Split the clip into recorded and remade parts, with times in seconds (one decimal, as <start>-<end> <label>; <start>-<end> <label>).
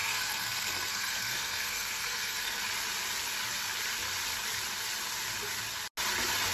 0.0-2.6 remade; 2.6-6.5 recorded